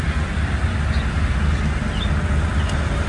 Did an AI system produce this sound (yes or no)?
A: no